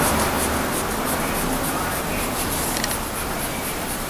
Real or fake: real